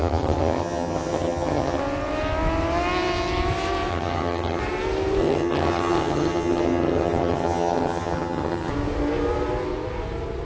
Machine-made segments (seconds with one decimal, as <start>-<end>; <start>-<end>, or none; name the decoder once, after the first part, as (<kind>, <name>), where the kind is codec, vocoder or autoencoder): 0.0-1.8 (vocoder, HiFi-GAN); 3.9-4.6; 5.2-8.7